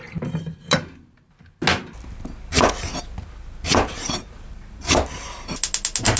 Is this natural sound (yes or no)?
yes